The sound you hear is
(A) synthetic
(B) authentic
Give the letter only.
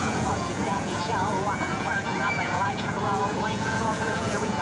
A